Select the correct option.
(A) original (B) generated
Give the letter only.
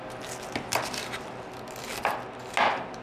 A